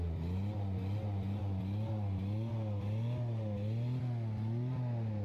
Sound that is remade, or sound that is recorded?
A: recorded